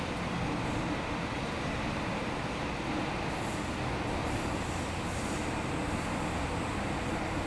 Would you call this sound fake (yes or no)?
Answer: no